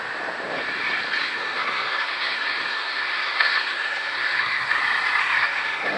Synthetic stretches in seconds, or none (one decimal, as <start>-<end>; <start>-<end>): 1.2-4.8; 5.2-6.0